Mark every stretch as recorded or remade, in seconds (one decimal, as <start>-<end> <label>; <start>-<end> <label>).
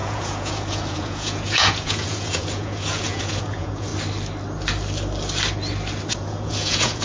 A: 0.0-3.9 remade; 3.9-6.1 recorded; 6.1-7.0 remade